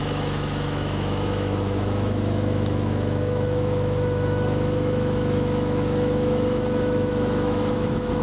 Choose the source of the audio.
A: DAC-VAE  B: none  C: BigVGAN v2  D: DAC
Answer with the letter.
A